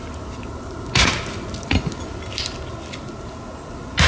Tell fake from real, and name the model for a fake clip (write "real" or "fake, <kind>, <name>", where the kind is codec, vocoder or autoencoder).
real